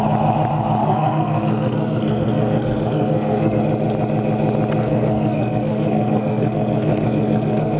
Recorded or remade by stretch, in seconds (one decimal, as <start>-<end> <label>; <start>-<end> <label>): 0.0-0.8 recorded; 0.8-3.6 remade; 3.6-4.8 recorded; 4.8-7.8 remade